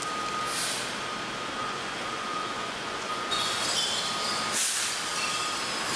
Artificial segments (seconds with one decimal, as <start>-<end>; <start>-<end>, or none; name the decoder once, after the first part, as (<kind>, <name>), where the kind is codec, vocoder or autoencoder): 1.6-3.6 (vocoder, Vocos)